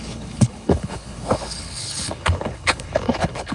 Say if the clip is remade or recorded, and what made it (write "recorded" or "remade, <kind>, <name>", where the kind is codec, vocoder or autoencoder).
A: remade, codec, HILCodec